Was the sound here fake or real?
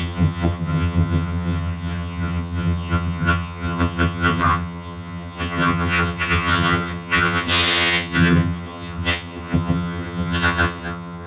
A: fake